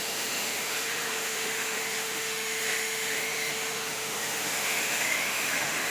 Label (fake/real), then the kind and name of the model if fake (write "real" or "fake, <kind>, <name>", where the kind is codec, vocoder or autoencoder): fake, autoencoder, DAC-VAE